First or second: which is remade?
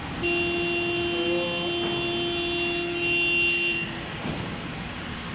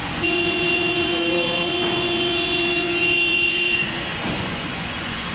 second